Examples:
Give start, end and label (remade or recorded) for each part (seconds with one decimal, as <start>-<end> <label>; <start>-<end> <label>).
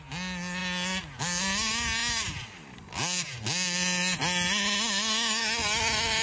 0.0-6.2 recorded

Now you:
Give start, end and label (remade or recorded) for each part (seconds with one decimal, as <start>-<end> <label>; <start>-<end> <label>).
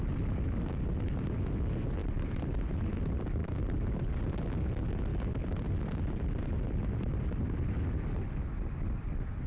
0.0-2.0 recorded; 2.0-3.0 remade; 3.0-9.5 recorded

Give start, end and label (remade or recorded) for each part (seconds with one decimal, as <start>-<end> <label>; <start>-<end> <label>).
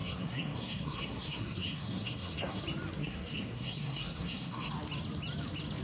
0.0-2.6 remade; 2.6-3.0 recorded; 3.0-4.7 remade; 4.7-5.8 recorded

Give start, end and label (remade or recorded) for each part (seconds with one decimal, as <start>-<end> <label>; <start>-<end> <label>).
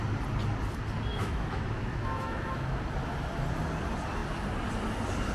0.0-1.1 recorded; 1.1-2.8 remade; 2.8-5.3 recorded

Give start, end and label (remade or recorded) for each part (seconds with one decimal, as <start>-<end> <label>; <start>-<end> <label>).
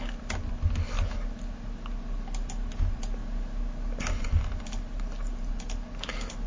0.0-6.5 recorded